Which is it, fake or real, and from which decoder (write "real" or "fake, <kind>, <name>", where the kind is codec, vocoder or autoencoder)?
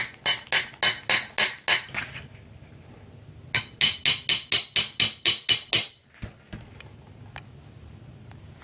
real